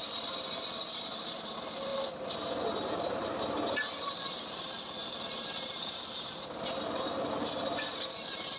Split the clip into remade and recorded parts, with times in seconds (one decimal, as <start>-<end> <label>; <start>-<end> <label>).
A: 0.0-8.6 recorded